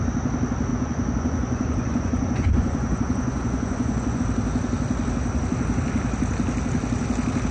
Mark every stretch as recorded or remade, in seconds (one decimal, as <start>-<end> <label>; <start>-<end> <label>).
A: 0.0-0.7 recorded; 0.7-4.2 remade; 4.2-7.5 recorded